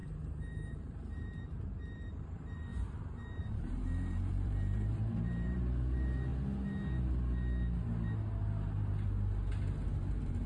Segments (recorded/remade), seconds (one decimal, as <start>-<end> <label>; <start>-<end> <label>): 0.0-6.3 remade; 6.3-10.1 recorded; 10.1-10.5 remade